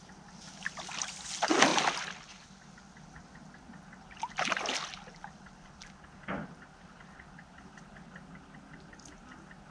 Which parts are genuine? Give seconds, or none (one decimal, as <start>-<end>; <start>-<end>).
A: 0.0-9.7